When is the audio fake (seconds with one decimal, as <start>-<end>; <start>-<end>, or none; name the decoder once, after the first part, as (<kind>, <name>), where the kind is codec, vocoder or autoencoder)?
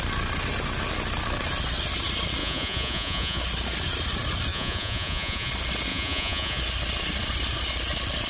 2.4-3.4 (vocoder, Vocos); 4.5-5.5; 5.9-6.6